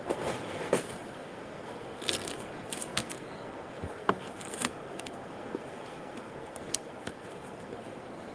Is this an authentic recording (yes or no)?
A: no